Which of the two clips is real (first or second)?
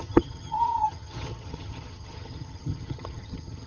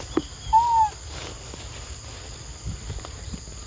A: second